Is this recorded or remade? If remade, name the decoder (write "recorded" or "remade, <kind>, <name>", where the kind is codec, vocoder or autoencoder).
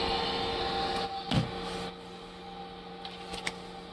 recorded